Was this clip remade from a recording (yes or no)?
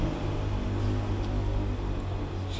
no